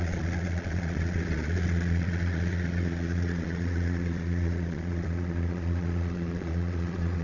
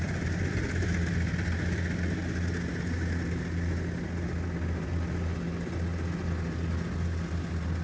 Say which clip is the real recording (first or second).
second